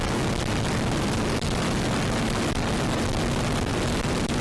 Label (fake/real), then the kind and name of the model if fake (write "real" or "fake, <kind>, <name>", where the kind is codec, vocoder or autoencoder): real